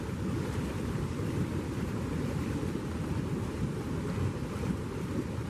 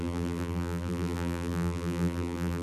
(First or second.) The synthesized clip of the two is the second